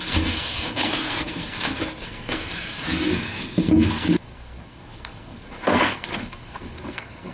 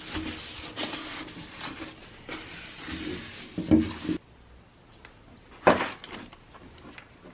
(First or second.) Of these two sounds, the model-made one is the first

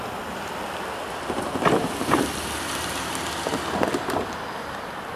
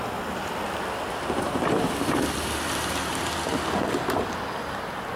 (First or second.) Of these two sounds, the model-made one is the first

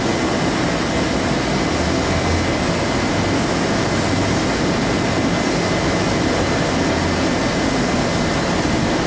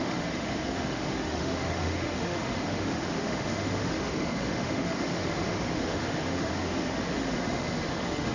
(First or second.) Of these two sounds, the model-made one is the second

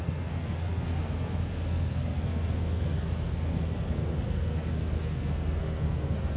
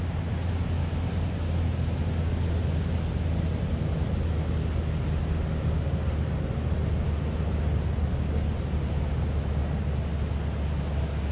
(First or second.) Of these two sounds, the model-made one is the first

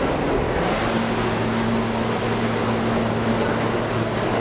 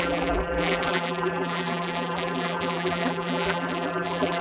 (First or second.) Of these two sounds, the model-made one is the second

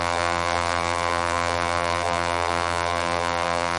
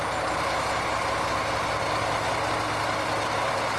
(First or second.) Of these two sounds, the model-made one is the first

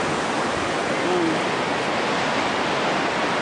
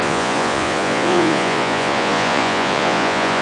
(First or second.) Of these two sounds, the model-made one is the second